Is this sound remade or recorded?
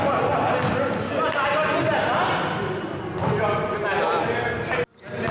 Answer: recorded